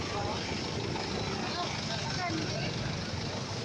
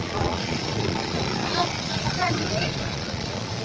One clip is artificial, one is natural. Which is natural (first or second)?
first